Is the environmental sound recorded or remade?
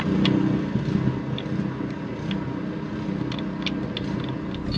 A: recorded